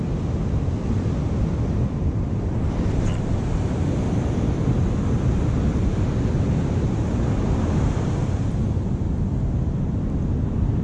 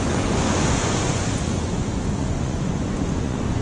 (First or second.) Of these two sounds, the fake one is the second